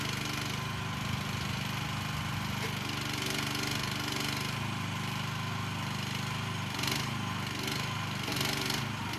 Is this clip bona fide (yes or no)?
yes